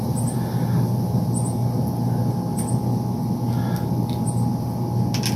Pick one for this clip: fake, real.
real